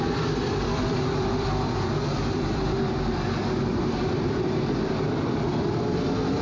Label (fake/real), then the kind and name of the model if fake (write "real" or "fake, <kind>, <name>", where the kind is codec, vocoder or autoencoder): fake, vocoder, BigVGAN v2